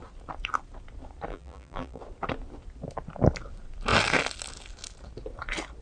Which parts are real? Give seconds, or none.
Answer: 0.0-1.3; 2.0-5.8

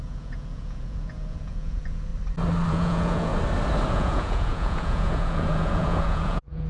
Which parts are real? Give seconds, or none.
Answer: 2.1-2.7; 3.3-3.9